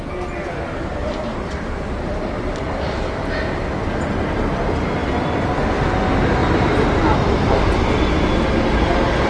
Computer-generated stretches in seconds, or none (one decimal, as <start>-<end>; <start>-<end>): 1.0-2.9; 6.4-7.0